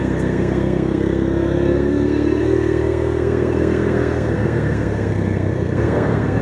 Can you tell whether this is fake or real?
fake